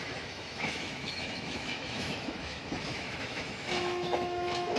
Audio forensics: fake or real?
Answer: fake